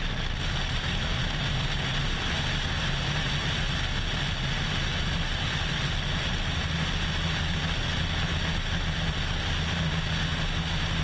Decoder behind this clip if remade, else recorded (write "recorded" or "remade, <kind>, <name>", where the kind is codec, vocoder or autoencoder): recorded